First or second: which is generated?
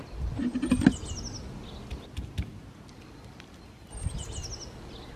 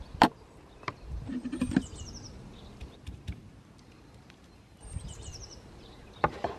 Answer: second